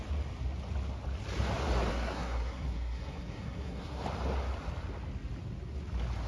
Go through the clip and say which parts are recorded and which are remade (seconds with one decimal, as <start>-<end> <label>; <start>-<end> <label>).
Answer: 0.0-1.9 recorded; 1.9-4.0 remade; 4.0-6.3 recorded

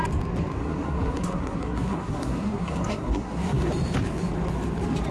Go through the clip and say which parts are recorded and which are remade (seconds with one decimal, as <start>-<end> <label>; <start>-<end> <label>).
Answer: 0.0-0.6 recorded; 0.6-3.7 remade; 3.7-5.1 recorded

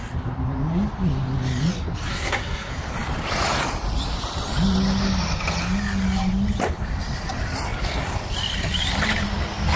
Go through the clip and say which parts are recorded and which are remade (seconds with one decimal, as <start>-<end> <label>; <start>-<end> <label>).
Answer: 0.0-2.1 recorded; 2.1-2.7 remade; 2.7-9.8 recorded

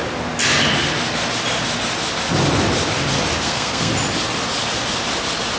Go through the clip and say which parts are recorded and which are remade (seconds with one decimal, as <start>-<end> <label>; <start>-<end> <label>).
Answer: 0.0-3.4 recorded; 3.4-3.9 remade; 3.9-5.6 recorded

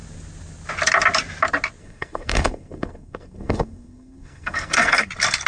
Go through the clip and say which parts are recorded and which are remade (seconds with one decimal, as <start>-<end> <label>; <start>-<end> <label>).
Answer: 0.0-1.8 recorded; 1.8-5.1 remade; 5.1-5.5 recorded

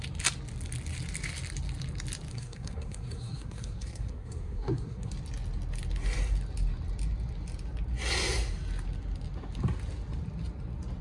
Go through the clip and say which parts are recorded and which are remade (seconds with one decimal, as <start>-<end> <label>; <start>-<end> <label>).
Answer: 0.0-2.3 recorded; 2.3-5.1 remade; 5.1-11.0 recorded

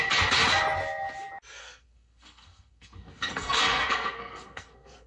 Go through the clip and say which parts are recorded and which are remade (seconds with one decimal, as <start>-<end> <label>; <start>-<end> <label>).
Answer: 0.0-1.6 recorded; 1.6-5.1 remade